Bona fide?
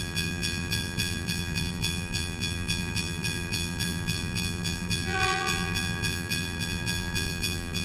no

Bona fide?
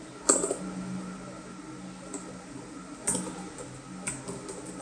yes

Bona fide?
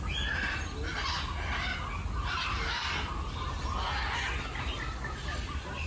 yes